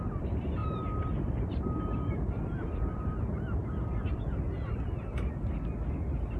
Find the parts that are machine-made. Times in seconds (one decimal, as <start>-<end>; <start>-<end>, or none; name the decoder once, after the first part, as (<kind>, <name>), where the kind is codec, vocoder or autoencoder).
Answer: 0.6-4.4 (vocoder, BigVGAN v2)